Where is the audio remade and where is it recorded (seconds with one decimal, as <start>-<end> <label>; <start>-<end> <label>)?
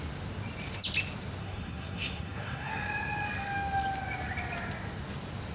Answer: 0.0-1.4 recorded; 1.4-2.7 remade; 2.7-5.5 recorded